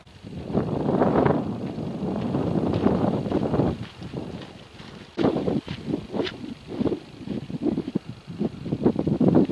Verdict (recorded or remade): recorded